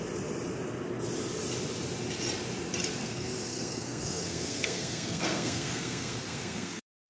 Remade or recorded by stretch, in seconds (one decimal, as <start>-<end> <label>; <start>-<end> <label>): 0.0-3.0 recorded; 3.0-7.1 remade